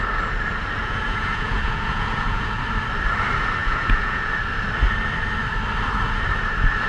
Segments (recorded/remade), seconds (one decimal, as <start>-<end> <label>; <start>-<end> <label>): 0.0-0.8 recorded; 0.8-2.6 remade; 2.6-3.6 recorded; 3.6-4.3 remade; 4.3-6.9 recorded